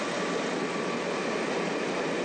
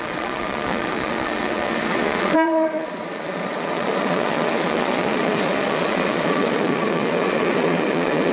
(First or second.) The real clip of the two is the first